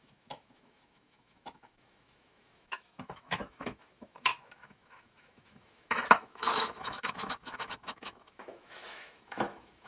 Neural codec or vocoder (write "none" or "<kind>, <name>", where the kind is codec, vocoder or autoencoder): autoencoder, DAC-VAE